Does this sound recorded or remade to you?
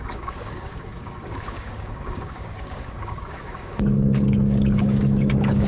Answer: remade